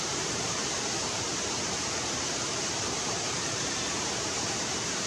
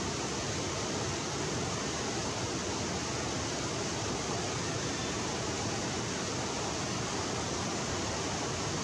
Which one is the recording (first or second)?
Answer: second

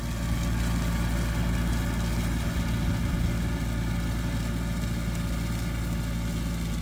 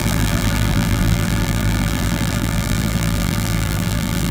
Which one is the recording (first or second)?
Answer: first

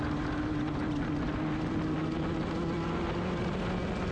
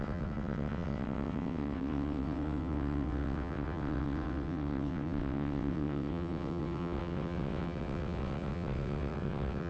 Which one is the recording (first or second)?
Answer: first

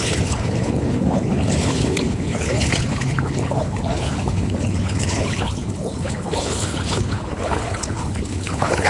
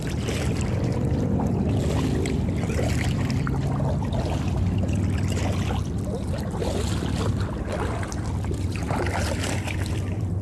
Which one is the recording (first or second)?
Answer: second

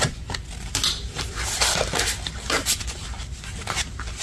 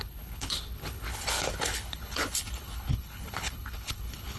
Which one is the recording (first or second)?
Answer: first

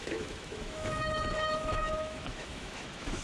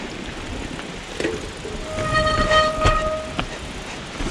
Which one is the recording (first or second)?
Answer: second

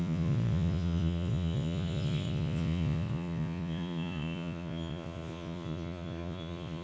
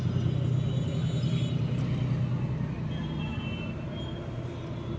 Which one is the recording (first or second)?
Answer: second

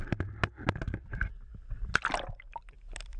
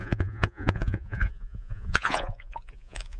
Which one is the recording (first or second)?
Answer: first